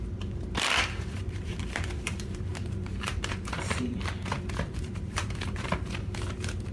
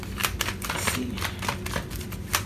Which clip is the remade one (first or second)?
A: first